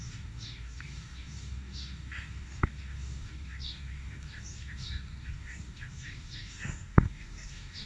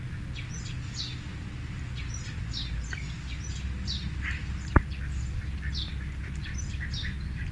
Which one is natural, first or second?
second